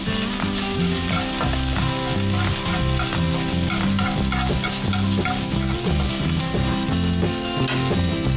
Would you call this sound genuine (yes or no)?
yes